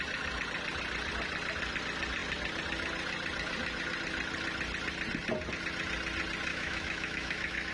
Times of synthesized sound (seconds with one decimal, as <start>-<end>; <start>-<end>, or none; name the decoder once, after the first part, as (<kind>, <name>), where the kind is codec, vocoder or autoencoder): 6.5-7.7 (autoencoder, DAC-VAE)